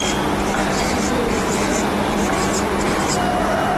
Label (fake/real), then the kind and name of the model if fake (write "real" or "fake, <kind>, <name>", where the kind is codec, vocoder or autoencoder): real